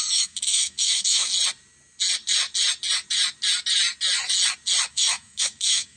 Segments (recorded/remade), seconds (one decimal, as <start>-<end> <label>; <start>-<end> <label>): 0.0-1.3 remade; 1.3-4.9 recorded; 4.9-6.0 remade